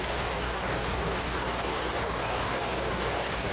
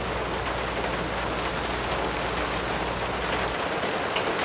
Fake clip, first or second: first